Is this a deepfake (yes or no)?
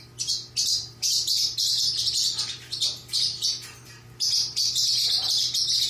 yes